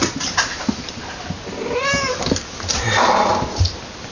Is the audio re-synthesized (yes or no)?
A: no